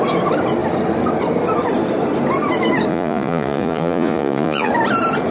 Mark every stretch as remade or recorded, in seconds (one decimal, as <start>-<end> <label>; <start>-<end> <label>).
0.0-2.9 recorded; 2.9-4.7 remade; 4.7-5.3 recorded